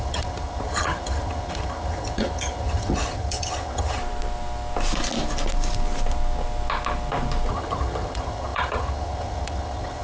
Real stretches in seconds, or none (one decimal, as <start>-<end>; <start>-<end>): 4.0-7.5